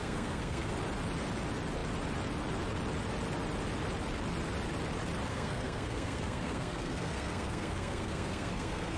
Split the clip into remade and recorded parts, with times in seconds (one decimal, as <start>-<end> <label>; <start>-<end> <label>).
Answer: 0.0-0.7 remade; 0.7-5.3 recorded; 5.3-9.0 remade